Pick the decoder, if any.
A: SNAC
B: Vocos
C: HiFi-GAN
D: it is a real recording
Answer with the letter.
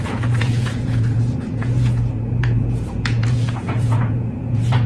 B